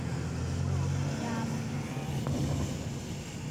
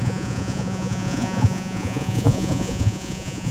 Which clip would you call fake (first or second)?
second